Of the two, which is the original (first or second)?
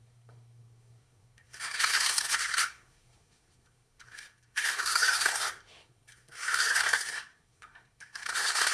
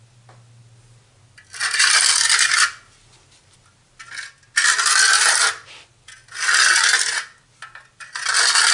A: second